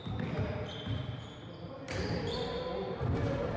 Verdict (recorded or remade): recorded